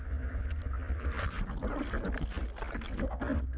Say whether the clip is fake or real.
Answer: real